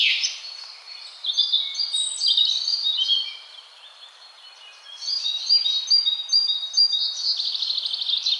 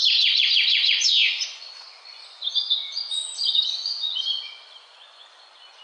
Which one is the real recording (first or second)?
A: first